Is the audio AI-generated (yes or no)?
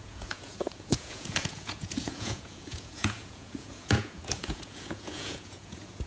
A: yes